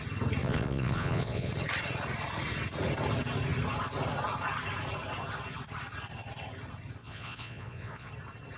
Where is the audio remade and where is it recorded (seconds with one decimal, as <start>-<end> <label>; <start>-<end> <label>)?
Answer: 0.0-0.4 recorded; 0.4-1.5 remade; 1.5-7.0 recorded; 7.0-8.1 remade; 8.1-8.6 recorded